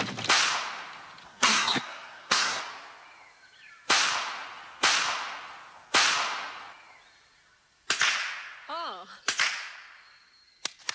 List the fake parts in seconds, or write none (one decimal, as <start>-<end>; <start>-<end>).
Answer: 1.2-2.6